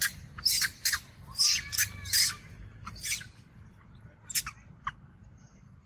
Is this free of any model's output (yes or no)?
yes